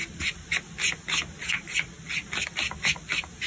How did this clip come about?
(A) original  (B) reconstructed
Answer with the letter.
A